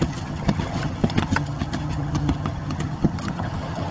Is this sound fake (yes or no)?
yes